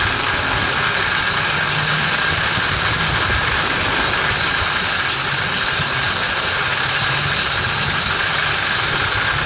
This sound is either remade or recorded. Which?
recorded